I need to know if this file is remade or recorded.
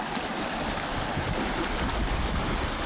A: recorded